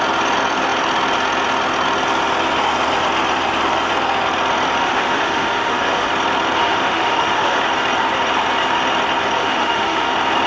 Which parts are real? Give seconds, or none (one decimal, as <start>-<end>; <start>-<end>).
0.0-4.8; 6.1-6.6; 7.6-9.4; 10.1-10.5